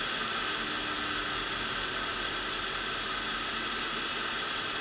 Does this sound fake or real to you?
real